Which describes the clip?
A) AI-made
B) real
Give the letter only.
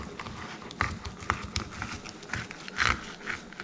B